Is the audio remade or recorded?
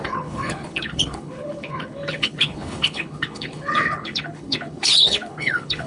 remade